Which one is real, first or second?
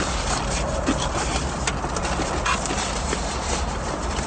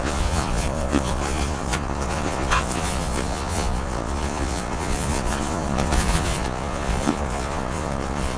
first